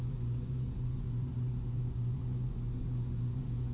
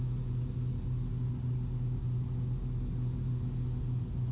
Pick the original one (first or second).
second